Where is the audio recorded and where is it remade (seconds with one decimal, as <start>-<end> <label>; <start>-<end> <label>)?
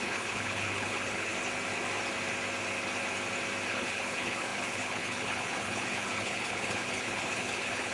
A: 0.0-1.3 remade; 1.3-3.7 recorded; 3.7-7.9 remade